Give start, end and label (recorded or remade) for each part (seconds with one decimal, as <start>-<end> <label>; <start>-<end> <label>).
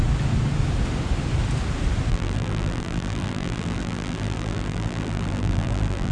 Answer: 0.0-2.1 recorded; 2.1-6.1 remade